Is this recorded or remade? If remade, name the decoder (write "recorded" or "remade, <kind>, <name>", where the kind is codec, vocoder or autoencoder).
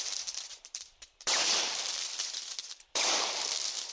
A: remade, vocoder, BigVGAN v2